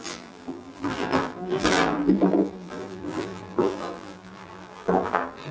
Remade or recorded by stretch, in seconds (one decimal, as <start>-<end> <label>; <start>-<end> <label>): 0.0-5.5 remade